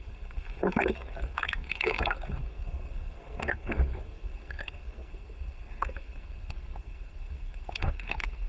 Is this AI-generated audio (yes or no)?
yes